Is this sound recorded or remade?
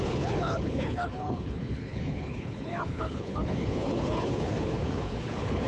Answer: remade